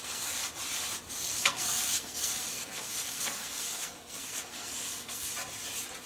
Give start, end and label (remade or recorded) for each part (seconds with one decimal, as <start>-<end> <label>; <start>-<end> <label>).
0.0-0.4 remade; 0.4-1.1 recorded; 1.1-5.3 remade; 5.3-6.1 recorded